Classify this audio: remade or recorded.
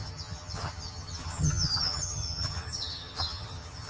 remade